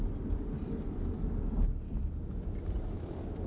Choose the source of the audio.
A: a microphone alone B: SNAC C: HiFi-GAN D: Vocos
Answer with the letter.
A